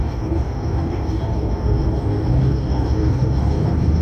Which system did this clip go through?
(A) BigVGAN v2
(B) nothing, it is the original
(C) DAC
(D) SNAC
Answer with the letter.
C